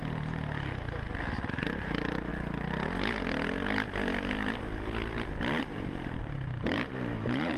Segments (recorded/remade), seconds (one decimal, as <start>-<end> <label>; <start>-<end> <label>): 0.0-1.5 recorded; 1.5-2.3 remade; 2.3-5.6 recorded; 5.6-7.6 remade